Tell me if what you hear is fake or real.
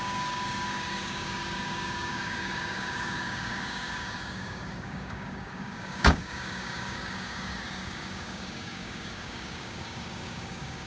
fake